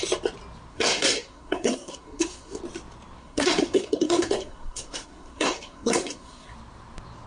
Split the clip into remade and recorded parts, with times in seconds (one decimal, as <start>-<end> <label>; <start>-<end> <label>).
0.0-0.7 recorded; 0.7-2.6 remade; 2.6-3.2 recorded; 3.2-6.5 remade; 6.5-7.3 recorded